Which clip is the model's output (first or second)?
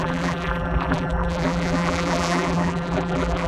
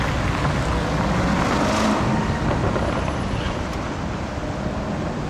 first